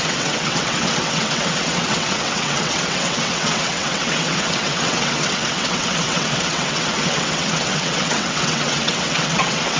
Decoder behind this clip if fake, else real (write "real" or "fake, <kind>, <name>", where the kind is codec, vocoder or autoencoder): fake, vocoder, WaveNeXt